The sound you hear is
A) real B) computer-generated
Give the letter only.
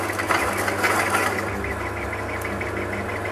A